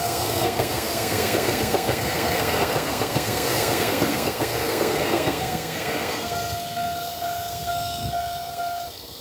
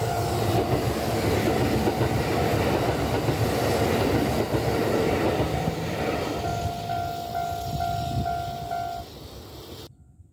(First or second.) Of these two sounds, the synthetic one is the first